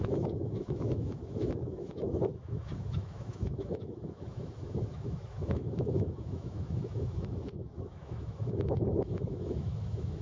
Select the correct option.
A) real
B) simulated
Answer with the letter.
B